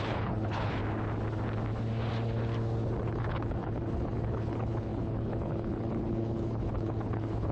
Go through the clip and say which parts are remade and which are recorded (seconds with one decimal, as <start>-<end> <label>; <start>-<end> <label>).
0.0-0.8 remade; 0.8-3.0 recorded; 3.0-7.5 remade